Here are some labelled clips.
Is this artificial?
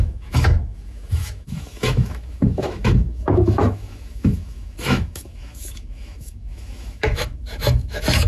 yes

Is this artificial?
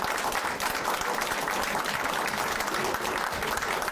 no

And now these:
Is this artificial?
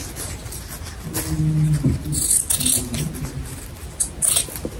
no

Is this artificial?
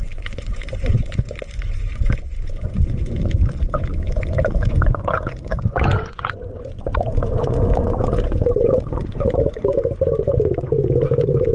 yes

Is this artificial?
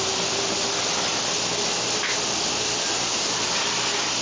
no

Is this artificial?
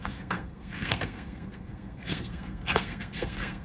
yes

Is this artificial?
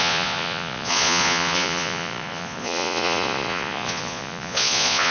yes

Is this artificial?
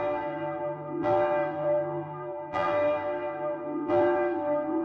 yes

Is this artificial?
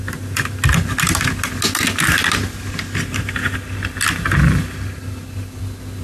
no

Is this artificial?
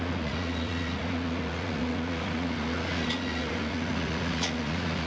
yes